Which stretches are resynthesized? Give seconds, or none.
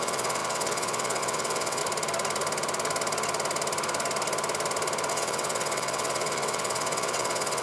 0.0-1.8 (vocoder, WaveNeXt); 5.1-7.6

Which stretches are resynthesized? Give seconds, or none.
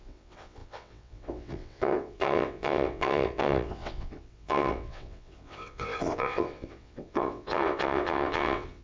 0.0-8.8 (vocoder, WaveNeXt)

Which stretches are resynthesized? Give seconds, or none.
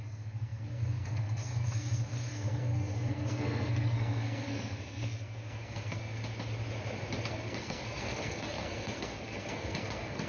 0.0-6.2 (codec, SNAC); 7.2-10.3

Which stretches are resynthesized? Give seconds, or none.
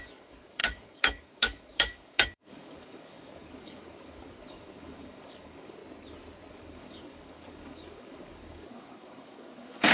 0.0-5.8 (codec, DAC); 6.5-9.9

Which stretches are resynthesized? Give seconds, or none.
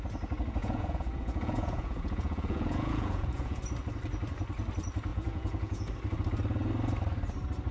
0.6-3.6 (vocoder, Vocos); 5.1-5.9